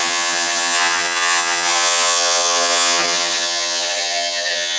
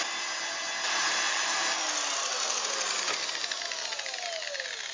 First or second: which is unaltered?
second